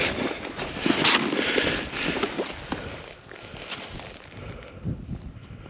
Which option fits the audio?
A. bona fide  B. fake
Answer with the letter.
A